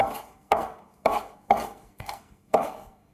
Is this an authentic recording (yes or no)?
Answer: no